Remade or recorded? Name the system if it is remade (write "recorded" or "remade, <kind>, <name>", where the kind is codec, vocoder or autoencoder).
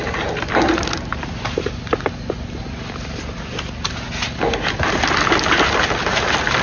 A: recorded